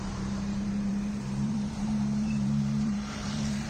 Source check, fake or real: fake